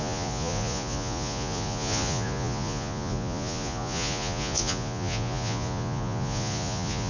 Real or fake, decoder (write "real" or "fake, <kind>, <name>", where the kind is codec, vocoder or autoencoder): fake, vocoder, Vocos